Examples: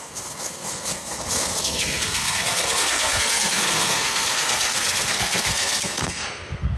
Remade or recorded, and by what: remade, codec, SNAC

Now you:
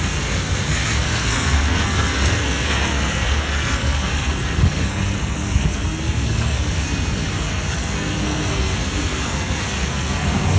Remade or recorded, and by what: remade, codec, SNAC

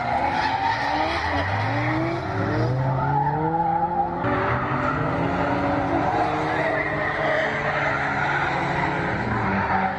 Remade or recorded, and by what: recorded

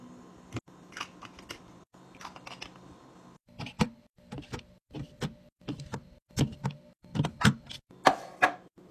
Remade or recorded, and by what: recorded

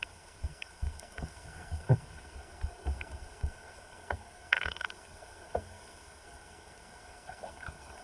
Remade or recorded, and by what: remade, codec, SNAC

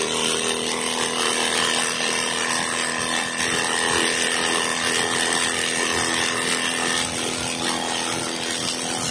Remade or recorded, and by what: recorded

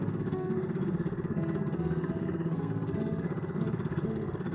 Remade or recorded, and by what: remade, codec, SNAC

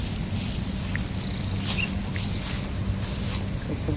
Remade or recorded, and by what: recorded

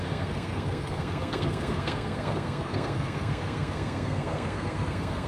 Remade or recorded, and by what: remade, codec, SNAC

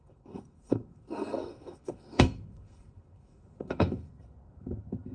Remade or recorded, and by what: remade, codec, SNAC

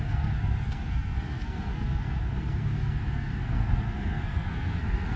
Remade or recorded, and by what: remade, codec, SNAC